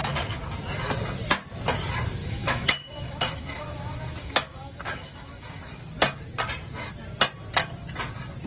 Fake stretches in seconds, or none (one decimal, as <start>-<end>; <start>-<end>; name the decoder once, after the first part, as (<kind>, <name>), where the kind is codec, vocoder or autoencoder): 2.2-5.8 (autoencoder, DAC-VAE)